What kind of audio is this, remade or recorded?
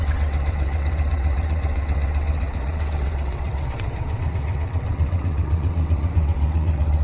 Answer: remade